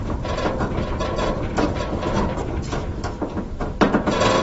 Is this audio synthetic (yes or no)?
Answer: yes